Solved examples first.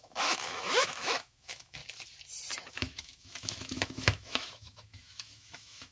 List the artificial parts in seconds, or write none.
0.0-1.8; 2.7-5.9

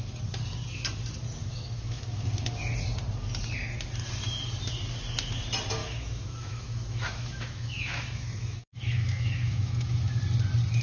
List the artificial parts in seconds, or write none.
1.4-2.2; 5.8-10.2

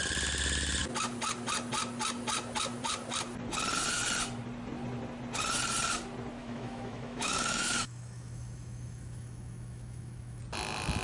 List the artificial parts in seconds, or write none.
6.4-10.4

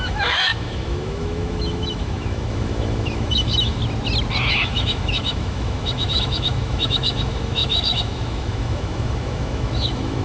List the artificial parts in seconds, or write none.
0.0-3.8; 4.5-10.2

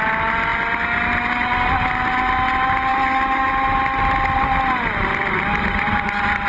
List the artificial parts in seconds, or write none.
2.9-3.5

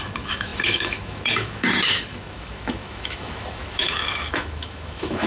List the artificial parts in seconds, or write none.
0.0-5.3

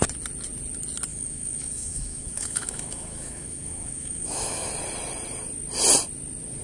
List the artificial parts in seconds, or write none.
1.1-4.7

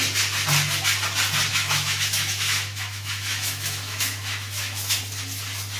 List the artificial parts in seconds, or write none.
1.5-5.0